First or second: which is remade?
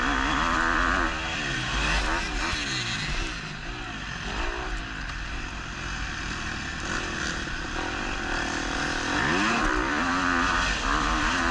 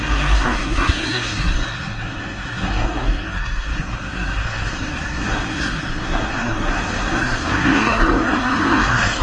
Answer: second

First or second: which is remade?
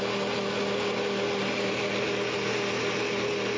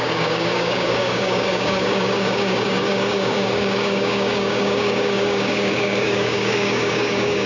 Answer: second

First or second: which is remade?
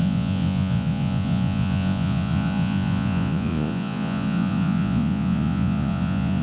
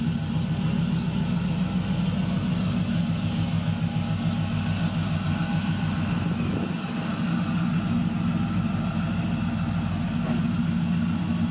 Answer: first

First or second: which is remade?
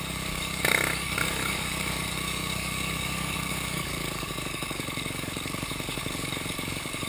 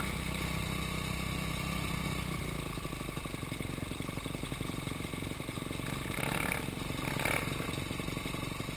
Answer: first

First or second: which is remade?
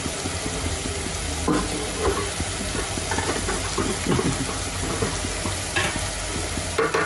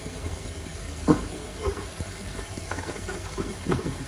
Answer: second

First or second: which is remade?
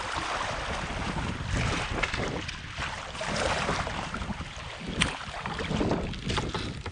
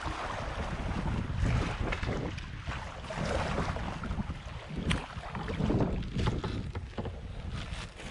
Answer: first